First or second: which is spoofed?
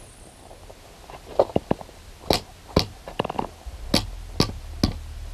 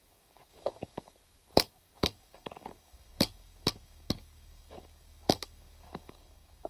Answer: second